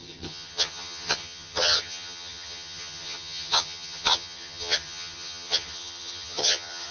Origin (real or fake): fake